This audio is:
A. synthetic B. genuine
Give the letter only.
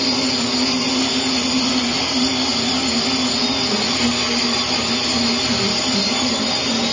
B